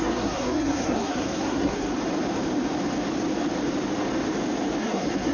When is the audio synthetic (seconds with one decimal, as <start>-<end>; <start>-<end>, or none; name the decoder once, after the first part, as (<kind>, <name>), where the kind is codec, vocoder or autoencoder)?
0.0-1.9 (codec, SNAC); 4.8-5.3